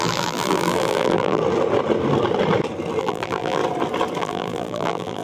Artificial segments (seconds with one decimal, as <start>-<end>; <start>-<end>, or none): 0.0-1.4; 3.0-3.6; 4.2-5.2